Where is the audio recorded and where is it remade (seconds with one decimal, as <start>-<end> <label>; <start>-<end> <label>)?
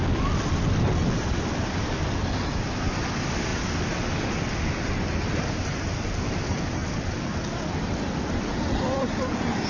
0.0-3.5 remade; 3.5-5.8 recorded; 5.8-9.7 remade